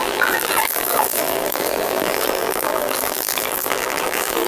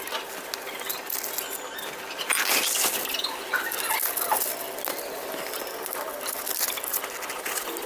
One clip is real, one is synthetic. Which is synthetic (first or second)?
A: first